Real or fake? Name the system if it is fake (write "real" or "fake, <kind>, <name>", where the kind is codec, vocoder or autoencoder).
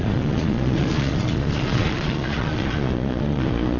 fake, vocoder, Vocos